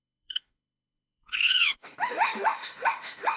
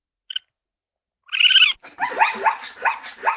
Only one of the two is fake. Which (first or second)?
first